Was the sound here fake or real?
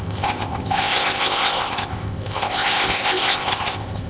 fake